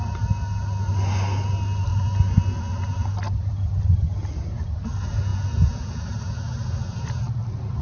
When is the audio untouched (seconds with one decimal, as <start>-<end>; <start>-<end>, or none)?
0.0-7.8

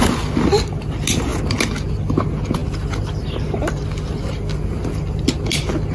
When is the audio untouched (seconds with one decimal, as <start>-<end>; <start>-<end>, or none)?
0.0-5.9

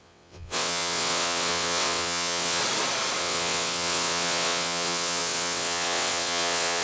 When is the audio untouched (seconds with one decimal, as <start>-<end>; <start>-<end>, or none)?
2.6-3.2